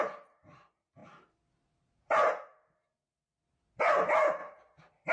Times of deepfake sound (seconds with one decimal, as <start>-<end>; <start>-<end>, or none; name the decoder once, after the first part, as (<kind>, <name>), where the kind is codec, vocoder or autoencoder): 4.4-5.1 (vocoder, BigVGAN v2)